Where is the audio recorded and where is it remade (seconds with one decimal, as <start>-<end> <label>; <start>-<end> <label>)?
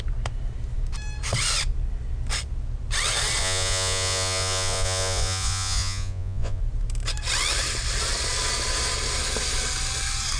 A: 0.0-3.4 recorded; 3.4-6.6 remade; 6.6-10.4 recorded